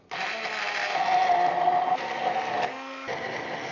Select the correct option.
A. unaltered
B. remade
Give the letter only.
A